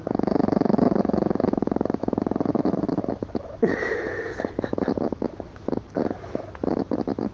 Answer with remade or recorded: remade